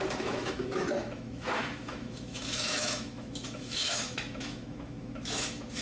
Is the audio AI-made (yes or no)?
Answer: yes